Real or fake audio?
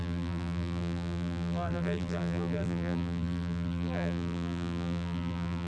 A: fake